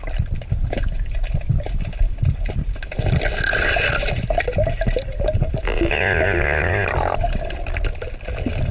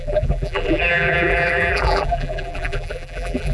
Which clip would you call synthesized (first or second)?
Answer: second